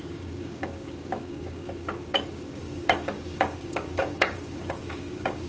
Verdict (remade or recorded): remade